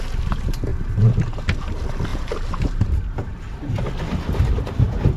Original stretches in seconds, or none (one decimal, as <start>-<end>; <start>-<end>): 0.0-0.7; 1.2-2.1; 3.3-5.2